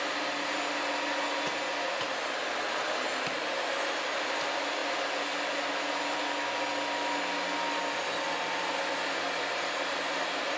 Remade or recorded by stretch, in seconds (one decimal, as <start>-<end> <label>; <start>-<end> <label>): 0.0-10.6 recorded